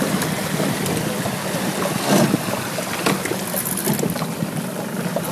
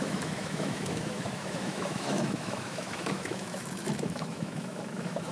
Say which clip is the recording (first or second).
first